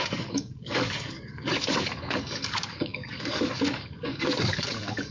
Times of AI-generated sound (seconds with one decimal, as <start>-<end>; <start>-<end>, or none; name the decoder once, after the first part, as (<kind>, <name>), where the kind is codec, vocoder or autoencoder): 0.0-5.1 (codec, DAC)